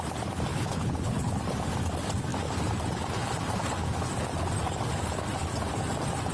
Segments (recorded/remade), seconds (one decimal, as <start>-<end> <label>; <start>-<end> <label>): 0.0-0.5 recorded; 0.5-1.4 remade; 1.4-6.3 recorded